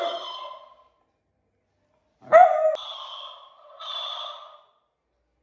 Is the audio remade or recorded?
recorded